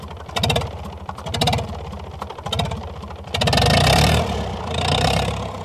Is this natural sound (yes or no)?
yes